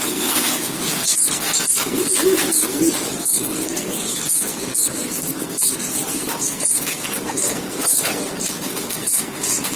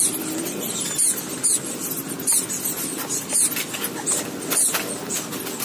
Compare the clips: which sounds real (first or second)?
second